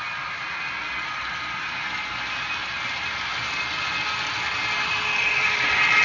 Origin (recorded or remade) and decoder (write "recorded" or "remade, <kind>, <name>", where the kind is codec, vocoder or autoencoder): recorded